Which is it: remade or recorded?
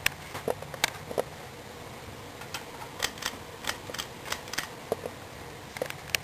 recorded